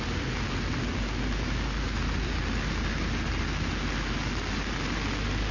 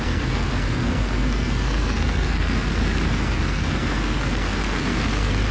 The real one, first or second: first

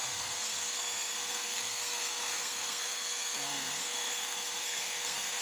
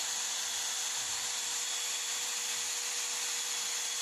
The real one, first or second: second